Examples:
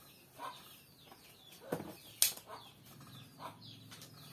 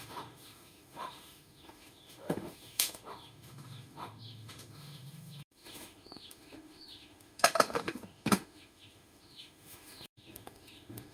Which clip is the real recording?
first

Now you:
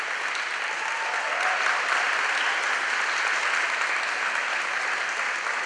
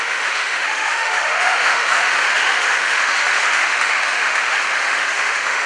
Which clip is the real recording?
first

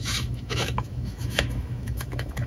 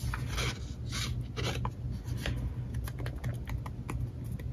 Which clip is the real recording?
second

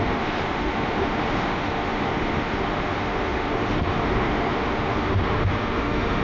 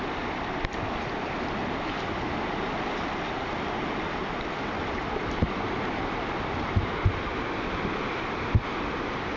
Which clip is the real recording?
second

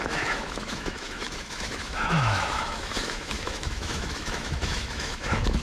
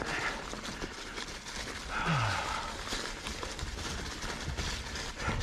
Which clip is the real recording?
second